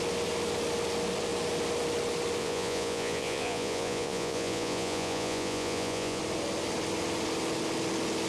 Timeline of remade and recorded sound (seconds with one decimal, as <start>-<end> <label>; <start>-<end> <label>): 0.0-2.4 recorded; 2.4-6.2 remade; 6.2-8.3 recorded